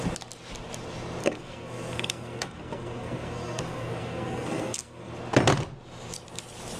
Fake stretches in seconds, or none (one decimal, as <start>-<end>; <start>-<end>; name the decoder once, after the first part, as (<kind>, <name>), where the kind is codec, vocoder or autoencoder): 1.2-5.1 (codec, SNAC)